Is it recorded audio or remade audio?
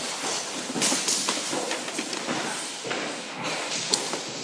recorded